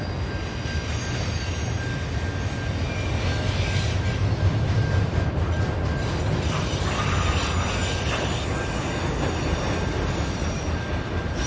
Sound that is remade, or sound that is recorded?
recorded